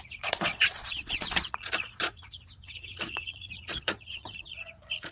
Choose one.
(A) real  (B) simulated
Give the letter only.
B